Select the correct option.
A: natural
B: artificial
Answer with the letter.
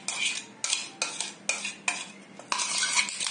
A